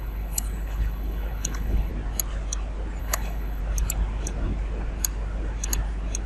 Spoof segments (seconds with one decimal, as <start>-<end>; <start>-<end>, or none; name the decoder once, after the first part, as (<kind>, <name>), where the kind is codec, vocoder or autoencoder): 0.0-1.9 (codec, HILCodec); 3.0-3.6